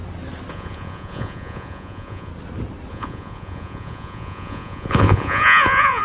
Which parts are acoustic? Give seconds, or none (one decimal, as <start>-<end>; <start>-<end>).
0.0-0.5; 2.3-2.9